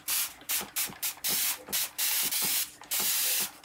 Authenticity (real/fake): real